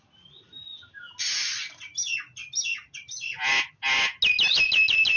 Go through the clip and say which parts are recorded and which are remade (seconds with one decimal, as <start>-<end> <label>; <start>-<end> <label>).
0.0-5.2 recorded